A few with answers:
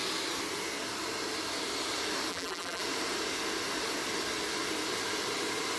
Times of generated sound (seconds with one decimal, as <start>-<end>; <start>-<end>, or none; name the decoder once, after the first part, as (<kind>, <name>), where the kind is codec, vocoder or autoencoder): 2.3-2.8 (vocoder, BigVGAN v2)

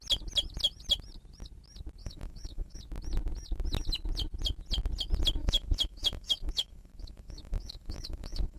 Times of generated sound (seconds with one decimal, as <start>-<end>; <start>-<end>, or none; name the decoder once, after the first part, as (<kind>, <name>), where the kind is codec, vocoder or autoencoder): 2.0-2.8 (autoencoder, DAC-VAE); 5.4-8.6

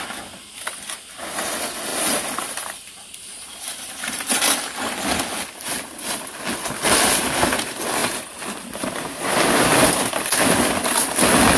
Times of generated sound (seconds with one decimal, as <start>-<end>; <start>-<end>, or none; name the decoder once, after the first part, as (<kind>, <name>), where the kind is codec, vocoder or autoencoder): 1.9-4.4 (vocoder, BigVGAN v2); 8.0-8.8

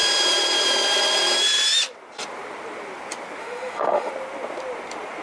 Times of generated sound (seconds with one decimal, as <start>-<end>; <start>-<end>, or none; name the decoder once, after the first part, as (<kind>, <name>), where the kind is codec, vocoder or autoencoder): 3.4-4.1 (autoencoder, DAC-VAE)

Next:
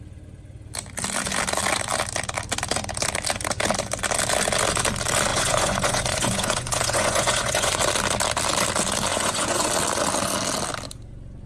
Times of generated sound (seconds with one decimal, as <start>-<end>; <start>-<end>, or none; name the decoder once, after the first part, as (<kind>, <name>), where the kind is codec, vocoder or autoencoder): 5.3-7.8 (vocoder, Vocos); 9.1-9.7

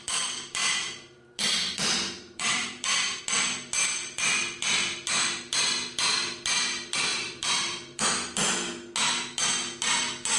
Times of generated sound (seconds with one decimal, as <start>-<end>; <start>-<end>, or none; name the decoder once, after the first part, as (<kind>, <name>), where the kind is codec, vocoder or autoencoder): 0.6-3.2 (vocoder, BigVGAN v2); 7.1-8.0

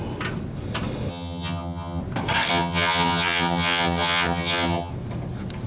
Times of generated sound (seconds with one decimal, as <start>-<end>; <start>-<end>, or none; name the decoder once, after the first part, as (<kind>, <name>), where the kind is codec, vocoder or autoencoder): 1.1-2.0 (vocoder, HiFi-GAN); 2.5-4.9

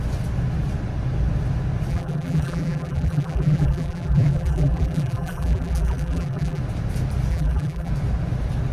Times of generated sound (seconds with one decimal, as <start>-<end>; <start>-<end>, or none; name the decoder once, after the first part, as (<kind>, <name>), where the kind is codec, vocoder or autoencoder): 1.9-6.6 (vocoder, BigVGAN v2); 7.3-7.9